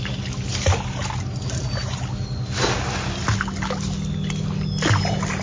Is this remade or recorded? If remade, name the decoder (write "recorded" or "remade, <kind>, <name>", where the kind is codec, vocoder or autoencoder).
recorded